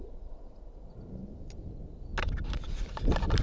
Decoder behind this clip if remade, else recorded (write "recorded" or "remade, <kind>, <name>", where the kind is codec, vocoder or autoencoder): recorded